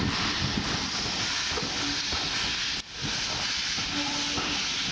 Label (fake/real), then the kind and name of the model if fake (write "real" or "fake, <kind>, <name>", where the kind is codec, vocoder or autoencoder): real